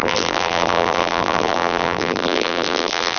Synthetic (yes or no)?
yes